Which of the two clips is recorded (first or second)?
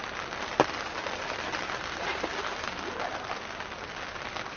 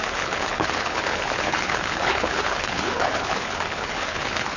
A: first